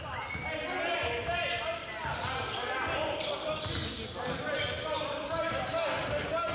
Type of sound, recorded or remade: recorded